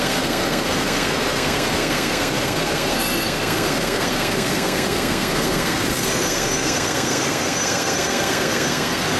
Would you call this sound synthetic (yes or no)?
yes